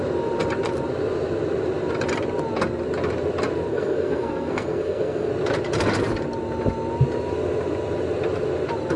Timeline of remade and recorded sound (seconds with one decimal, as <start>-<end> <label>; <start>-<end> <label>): 0.0-3.7 recorded; 3.7-5.3 remade; 5.3-9.0 recorded